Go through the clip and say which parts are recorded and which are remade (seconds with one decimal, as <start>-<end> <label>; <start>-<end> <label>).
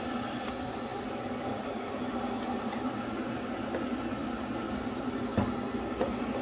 0.0-5.3 remade; 5.3-5.9 recorded; 5.9-6.4 remade